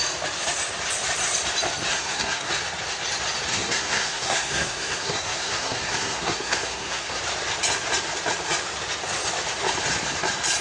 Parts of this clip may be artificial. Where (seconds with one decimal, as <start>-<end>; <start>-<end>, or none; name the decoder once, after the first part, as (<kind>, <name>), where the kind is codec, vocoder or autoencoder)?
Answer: 1.9-2.5 (codec, SNAC); 3.5-7.2